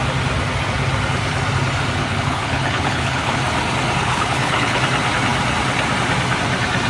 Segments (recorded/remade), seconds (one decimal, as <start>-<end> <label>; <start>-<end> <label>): 0.0-2.0 recorded; 2.0-3.4 remade; 3.4-4.0 recorded; 4.0-4.8 remade; 4.8-6.9 recorded